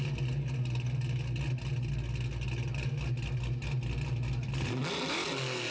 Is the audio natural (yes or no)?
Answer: yes